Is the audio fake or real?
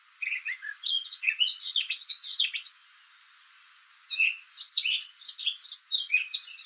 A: fake